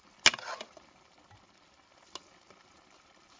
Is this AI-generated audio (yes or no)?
no